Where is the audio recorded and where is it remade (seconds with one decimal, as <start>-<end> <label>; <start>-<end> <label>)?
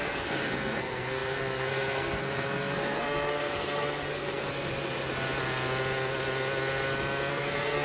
0.0-4.4 remade; 4.4-7.3 recorded; 7.3-7.8 remade